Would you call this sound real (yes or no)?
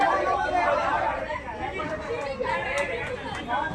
yes